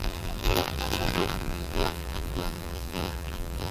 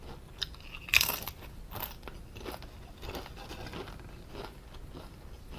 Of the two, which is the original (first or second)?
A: second